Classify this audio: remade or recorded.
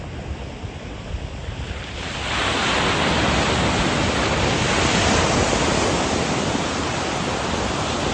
recorded